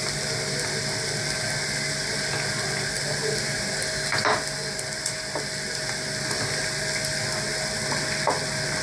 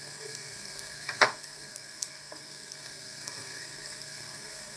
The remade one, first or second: second